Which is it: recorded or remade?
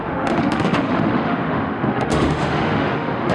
remade